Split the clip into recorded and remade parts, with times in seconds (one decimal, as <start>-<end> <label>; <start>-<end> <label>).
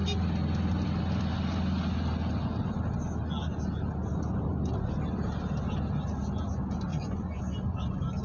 0.0-6.9 recorded; 6.9-7.4 remade; 7.4-8.2 recorded